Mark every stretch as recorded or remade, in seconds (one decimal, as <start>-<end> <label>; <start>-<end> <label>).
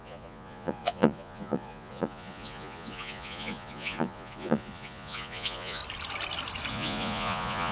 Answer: 0.0-5.8 remade; 5.8-6.7 recorded; 6.7-7.7 remade